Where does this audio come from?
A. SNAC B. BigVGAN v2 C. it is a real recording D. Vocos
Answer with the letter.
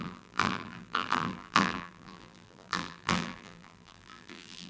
B